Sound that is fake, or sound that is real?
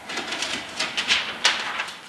real